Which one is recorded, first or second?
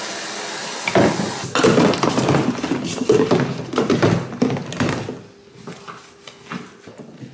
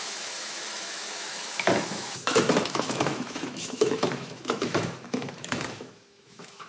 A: first